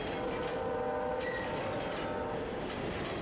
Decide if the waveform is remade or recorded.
recorded